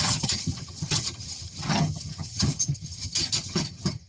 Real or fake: fake